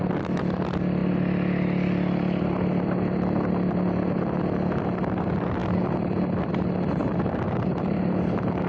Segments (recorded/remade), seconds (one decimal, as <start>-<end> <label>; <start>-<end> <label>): 0.0-7.0 recorded; 7.0-8.7 remade